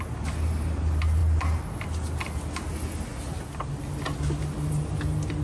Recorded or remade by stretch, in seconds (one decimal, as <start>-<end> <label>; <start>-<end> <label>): 0.0-5.4 recorded